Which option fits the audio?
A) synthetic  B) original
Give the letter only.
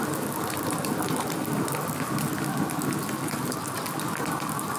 B